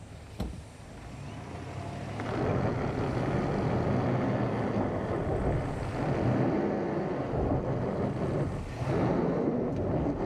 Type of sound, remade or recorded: recorded